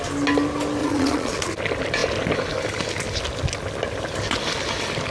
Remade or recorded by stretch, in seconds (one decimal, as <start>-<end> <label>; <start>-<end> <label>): 0.0-0.8 recorded; 0.8-1.5 remade; 1.5-5.1 recorded